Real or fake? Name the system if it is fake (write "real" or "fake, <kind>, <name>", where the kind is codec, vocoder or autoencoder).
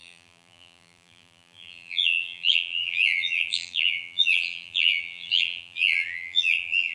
fake, vocoder, BigVGAN v2